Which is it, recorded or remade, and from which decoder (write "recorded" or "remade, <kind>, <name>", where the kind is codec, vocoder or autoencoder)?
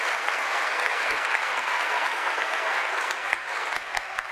remade, codec, SNAC